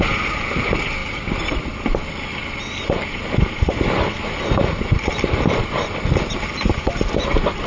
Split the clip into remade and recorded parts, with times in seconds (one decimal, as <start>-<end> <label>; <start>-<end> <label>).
0.0-7.7 recorded